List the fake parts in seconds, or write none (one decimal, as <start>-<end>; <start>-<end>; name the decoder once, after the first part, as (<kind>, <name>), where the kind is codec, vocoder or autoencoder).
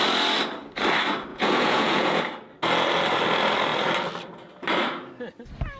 1.3-2.2 (vocoder, Vocos)